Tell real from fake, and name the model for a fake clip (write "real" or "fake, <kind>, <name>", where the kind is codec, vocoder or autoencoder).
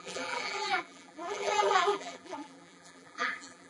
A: fake, vocoder, BigVGAN v2